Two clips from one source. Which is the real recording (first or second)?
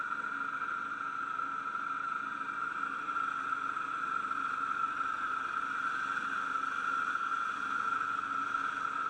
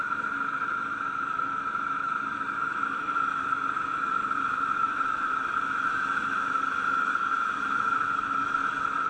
first